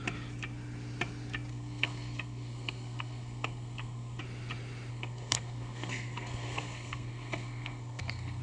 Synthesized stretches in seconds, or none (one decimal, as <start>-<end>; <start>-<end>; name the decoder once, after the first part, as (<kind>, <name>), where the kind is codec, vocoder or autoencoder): 1.5-4.2 (codec, SNAC); 4.9-8.4